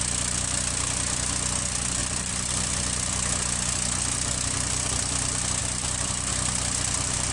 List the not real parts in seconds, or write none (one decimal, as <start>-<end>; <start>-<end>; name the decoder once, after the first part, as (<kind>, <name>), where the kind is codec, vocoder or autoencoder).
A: 2.0-2.5 (vocoder, BigVGAN v2); 5.6-6.3